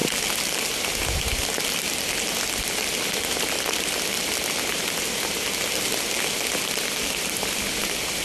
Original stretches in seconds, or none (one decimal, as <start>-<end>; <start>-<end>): 0.0-8.2